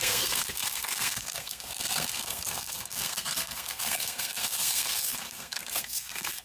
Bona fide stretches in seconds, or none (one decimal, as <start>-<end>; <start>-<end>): none